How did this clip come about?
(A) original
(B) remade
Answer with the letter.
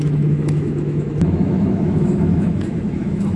B